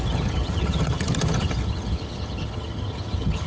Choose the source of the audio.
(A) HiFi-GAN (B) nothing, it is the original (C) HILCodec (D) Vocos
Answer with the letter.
A